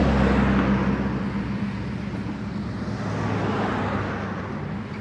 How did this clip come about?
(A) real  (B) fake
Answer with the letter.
A